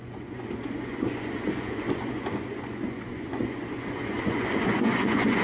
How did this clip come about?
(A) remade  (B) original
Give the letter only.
A